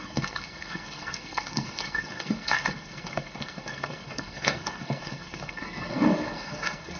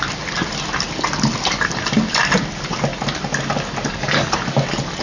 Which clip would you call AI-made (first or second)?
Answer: first